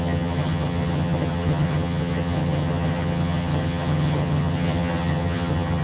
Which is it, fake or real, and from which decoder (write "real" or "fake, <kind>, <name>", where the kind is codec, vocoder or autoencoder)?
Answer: fake, vocoder, HiFi-GAN